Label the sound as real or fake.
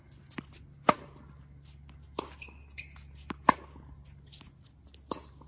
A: real